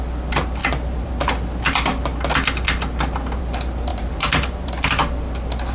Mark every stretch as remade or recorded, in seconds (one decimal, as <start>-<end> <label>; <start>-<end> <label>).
0.0-0.6 recorded; 0.6-1.1 remade; 1.1-3.9 recorded; 3.9-4.7 remade; 4.7-5.7 recorded